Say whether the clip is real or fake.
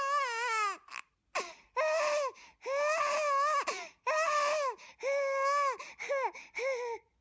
real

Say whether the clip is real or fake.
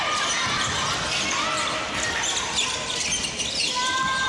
real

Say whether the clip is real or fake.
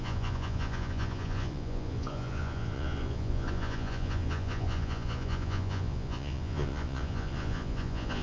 fake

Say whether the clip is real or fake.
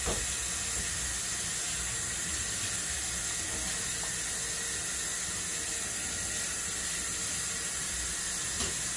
real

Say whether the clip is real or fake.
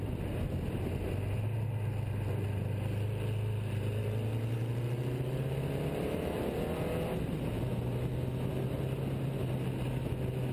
real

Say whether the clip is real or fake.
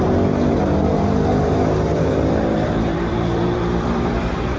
fake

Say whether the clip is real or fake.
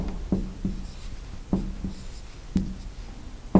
real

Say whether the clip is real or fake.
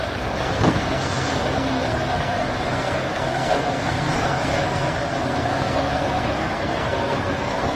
fake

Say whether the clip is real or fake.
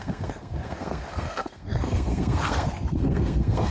fake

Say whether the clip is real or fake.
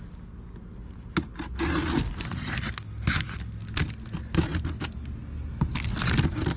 real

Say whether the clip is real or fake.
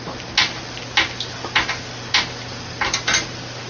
real